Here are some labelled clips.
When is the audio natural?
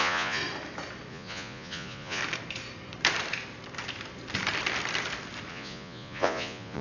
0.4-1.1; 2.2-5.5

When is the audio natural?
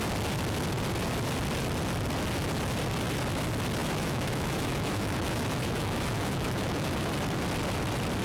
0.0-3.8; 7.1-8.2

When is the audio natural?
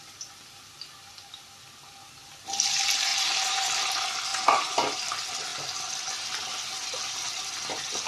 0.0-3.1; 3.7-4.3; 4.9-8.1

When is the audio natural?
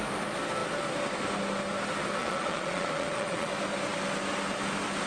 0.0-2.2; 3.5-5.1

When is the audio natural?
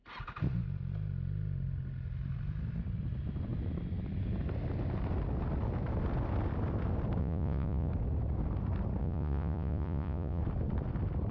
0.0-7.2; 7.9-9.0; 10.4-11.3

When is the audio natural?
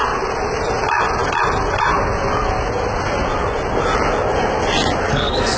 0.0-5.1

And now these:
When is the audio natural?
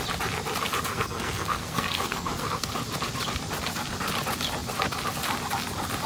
0.0-0.9; 2.7-6.1